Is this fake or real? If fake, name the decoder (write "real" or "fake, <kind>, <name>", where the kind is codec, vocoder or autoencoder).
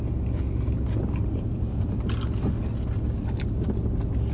real